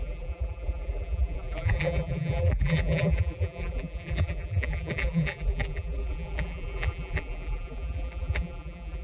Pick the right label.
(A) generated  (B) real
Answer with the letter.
A